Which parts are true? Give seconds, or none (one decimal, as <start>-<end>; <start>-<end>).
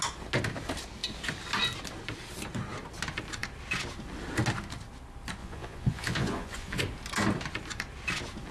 0.0-5.4; 6.8-8.5